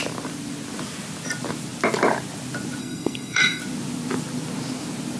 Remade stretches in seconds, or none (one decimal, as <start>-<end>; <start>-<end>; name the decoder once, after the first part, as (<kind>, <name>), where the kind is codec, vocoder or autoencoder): 2.8-3.6 (codec, SNAC)